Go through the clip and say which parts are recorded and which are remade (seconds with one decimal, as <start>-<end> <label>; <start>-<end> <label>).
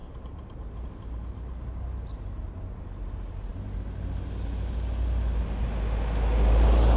0.0-7.0 recorded